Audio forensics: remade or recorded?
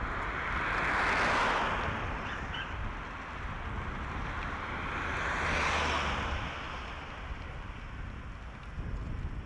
recorded